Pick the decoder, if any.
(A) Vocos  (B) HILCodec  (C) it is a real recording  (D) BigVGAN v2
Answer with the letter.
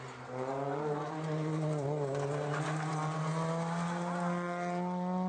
C